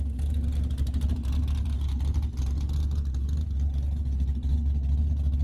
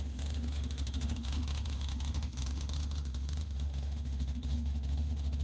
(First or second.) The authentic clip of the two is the first